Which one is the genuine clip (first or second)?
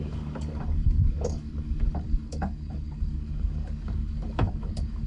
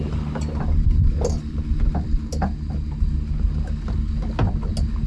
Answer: second